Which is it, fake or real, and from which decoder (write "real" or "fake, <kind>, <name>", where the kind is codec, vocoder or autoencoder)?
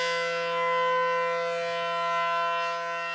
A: real